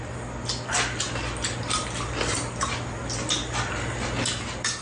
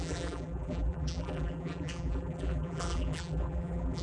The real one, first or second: first